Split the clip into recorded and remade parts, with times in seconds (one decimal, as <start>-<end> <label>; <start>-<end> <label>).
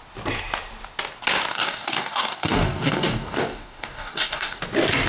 0.0-1.5 recorded; 1.5-4.6 remade; 4.6-5.1 recorded